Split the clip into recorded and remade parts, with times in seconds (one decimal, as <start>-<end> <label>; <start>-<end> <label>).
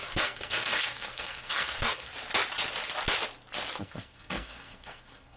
0.0-2.1 remade; 2.1-3.8 recorded; 3.8-5.4 remade